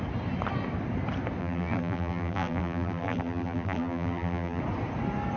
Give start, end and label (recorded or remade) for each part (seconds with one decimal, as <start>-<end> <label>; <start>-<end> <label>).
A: 0.0-1.4 recorded; 1.4-4.6 remade; 4.6-5.4 recorded